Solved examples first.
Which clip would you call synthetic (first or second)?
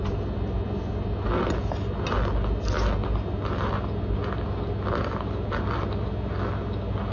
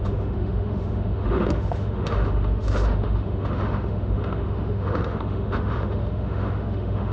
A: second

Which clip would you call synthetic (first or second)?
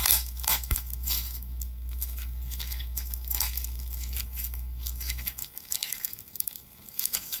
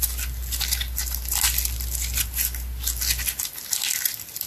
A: first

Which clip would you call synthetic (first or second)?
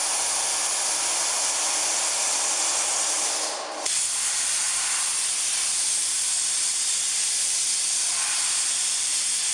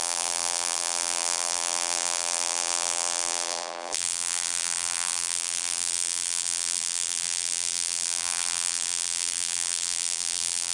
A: second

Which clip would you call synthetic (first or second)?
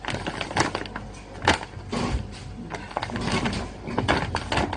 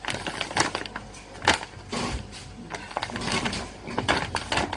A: second